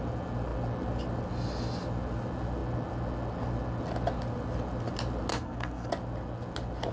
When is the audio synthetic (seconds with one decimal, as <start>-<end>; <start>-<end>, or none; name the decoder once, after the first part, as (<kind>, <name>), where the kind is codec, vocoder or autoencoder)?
5.3-5.9 (codec, SNAC)